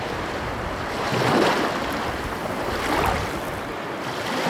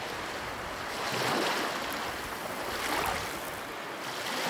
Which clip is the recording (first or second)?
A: second